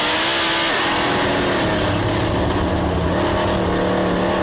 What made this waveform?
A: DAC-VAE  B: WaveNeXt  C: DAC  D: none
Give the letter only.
D